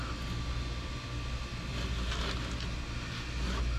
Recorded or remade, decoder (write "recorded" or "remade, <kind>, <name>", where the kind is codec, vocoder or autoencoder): recorded